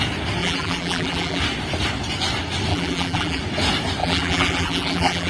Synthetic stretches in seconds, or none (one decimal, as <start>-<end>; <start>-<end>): 0.4-1.4; 2.7-3.4; 4.0-5.3